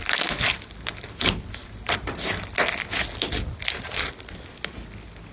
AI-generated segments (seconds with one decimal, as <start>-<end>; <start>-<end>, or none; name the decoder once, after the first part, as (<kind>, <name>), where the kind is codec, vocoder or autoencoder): none